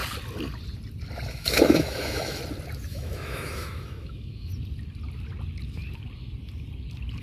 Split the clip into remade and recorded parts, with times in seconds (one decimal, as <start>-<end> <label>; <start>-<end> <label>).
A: 0.0-1.3 recorded; 1.3-2.4 remade; 2.4-2.9 recorded; 2.9-4.5 remade; 4.5-7.2 recorded